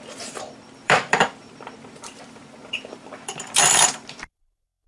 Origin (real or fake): fake